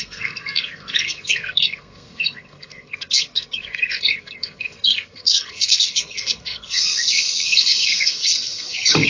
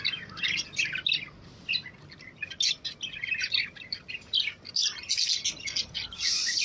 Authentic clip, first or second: second